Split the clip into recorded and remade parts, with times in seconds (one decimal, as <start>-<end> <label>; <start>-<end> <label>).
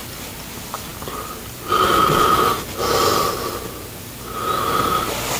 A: 0.0-0.5 remade; 0.5-5.4 recorded